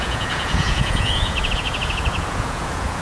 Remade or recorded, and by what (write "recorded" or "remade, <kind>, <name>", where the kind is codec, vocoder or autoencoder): remade, vocoder, Vocos